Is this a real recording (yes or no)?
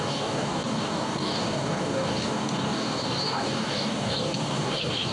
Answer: no